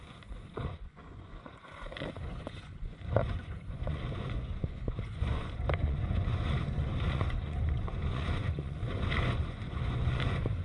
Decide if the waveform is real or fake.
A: fake